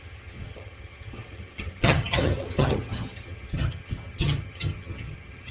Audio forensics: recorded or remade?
remade